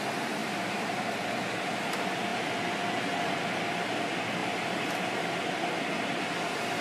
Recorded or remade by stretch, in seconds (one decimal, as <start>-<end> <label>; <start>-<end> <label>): 0.0-0.4 recorded; 0.4-1.7 remade; 1.7-6.8 recorded